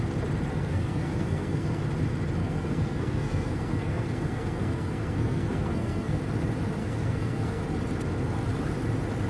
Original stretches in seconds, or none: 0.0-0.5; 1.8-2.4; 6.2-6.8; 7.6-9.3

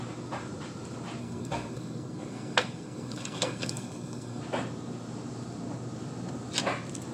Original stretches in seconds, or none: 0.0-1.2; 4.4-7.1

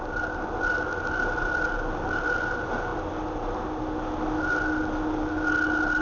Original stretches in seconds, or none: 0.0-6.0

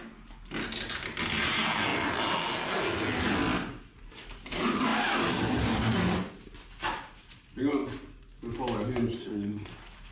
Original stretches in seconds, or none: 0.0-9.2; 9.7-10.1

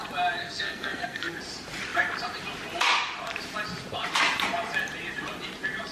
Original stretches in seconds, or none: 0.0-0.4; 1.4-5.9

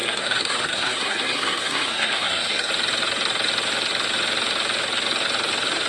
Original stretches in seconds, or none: 2.7-5.9

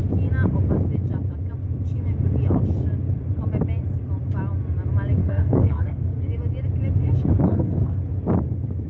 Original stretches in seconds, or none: 0.0-5.2; 6.2-7.5; 8.0-8.9

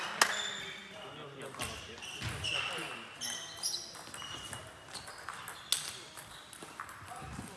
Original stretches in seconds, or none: 0.0-7.6